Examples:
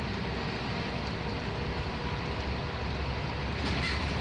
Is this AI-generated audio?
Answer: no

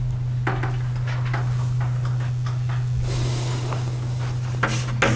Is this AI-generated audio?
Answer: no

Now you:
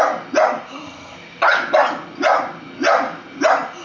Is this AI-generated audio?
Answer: no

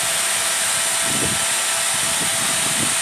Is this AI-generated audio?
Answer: no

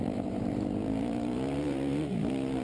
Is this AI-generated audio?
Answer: yes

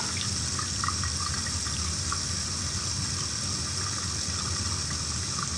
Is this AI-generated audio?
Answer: no